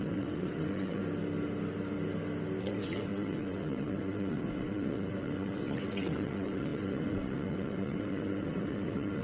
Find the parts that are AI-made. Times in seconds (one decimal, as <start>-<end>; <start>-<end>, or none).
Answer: 0.0-1.0; 2.6-9.2